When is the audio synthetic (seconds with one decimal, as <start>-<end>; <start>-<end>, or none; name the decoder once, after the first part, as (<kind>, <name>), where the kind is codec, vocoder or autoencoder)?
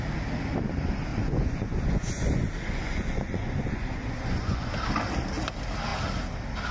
1.1-4.7 (vocoder, Vocos)